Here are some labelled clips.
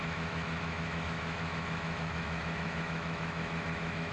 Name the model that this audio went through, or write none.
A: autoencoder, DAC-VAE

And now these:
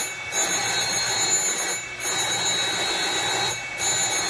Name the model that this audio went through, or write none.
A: none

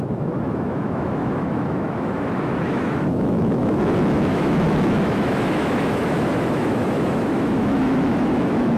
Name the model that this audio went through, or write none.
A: autoencoder, DAC-VAE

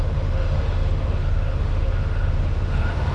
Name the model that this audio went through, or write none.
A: autoencoder, DAC-VAE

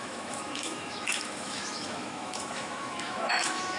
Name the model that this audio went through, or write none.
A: autoencoder, DAC-VAE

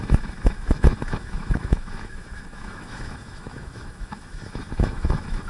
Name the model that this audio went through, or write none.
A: autoencoder, DAC-VAE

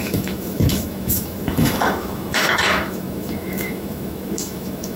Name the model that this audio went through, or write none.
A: autoencoder, DAC-VAE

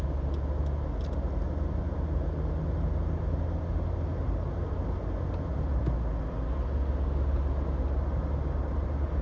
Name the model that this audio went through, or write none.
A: none